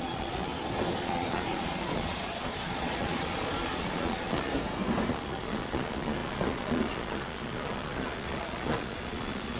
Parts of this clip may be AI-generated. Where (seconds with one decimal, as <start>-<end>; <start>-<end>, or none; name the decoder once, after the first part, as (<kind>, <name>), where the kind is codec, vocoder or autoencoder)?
0.0-0.5 (vocoder, Vocos); 1.0-4.5; 5.1-9.6